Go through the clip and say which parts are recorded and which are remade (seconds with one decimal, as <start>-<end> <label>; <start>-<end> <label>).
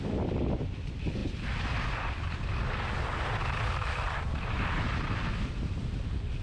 0.0-6.4 recorded